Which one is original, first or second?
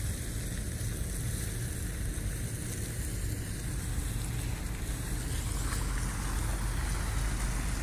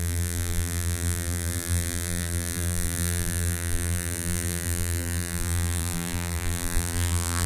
first